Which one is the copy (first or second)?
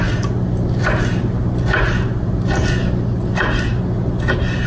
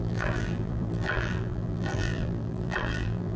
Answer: second